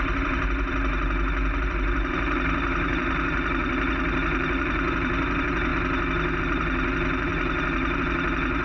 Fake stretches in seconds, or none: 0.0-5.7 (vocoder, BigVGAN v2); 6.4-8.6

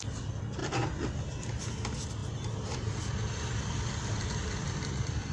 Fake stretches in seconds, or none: 0.6-1.7 (vocoder, BigVGAN v2); 2.2-5.3

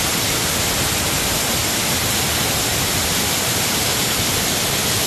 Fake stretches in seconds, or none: 1.1-1.6 (vocoder, BigVGAN v2); 2.7-3.9